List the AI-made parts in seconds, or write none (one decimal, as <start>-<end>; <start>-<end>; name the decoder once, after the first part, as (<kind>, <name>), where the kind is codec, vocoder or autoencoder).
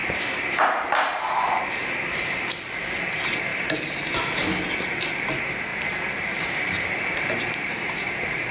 0.0-2.5 (vocoder, BigVGAN v2); 3.5-4.2; 5.7-8.5